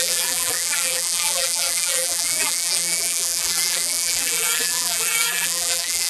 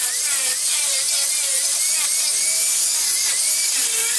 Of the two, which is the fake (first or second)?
first